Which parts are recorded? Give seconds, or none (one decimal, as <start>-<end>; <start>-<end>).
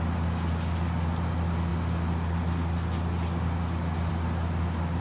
0.0-5.0